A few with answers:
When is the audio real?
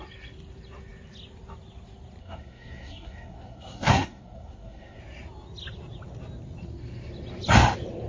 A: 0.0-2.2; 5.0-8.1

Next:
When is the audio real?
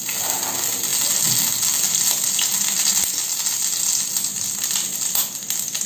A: 0.0-5.9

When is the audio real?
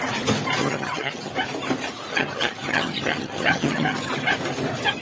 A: 0.0-0.6; 1.3-2.1; 4.1-5.0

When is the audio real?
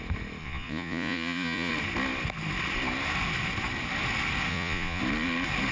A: 0.0-0.4; 1.7-4.5; 5.0-5.7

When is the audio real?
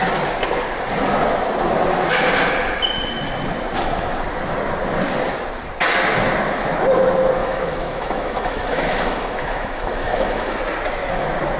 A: 0.0-7.4; 10.6-11.6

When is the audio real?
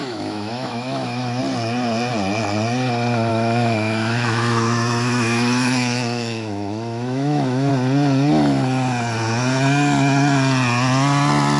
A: 1.4-3.3; 7.7-11.6